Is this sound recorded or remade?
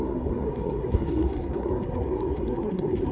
remade